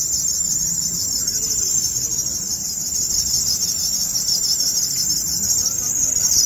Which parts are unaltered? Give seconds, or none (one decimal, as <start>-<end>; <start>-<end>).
0.0-1.2; 4.2-6.5